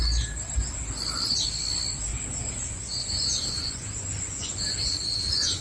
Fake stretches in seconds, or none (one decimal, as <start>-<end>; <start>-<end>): 2.1-5.6